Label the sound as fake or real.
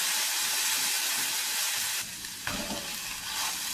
real